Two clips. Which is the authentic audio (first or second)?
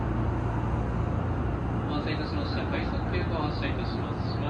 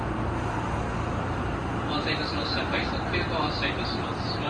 first